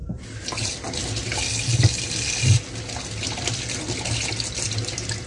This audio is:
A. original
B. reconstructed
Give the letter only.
A